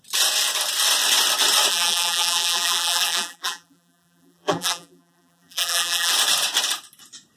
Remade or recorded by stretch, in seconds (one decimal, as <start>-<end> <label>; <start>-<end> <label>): 0.0-1.7 recorded; 1.7-6.1 remade; 6.1-7.4 recorded